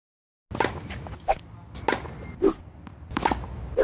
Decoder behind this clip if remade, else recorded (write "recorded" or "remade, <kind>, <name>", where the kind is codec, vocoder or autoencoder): recorded